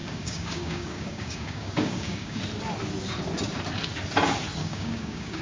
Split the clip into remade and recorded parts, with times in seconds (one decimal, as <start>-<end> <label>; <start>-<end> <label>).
0.0-2.4 remade; 2.4-4.6 recorded; 4.6-5.4 remade